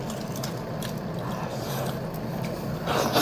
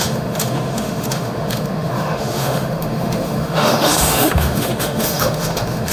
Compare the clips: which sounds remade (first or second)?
second